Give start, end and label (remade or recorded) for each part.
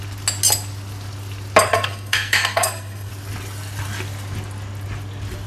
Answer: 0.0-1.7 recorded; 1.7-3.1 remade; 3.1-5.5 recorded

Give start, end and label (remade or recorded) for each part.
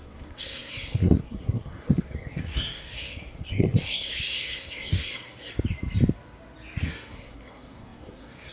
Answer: 0.0-5.5 remade; 5.5-6.8 recorded; 6.8-8.5 remade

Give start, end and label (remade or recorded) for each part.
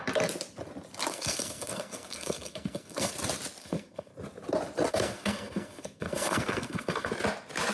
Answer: 0.0-1.1 recorded; 1.1-3.1 remade; 3.1-3.6 recorded; 3.6-4.1 remade; 4.1-4.9 recorded; 4.9-7.1 remade; 7.1-7.7 recorded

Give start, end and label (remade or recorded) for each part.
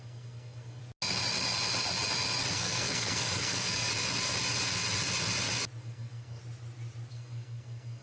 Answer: 0.0-0.8 remade; 0.8-2.5 recorded; 2.5-3.9 remade; 3.9-5.8 recorded; 5.8-6.4 remade; 6.4-7.1 recorded; 7.1-8.0 remade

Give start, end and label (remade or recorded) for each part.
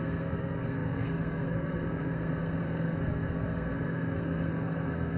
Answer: 0.0-5.2 remade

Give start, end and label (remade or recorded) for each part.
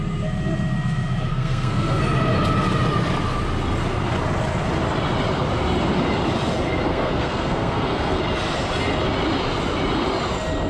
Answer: 0.0-1.3 recorded; 1.3-2.0 remade; 2.0-6.9 recorded; 6.9-8.2 remade; 8.2-10.7 recorded